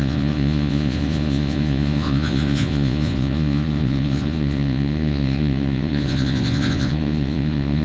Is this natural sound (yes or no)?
no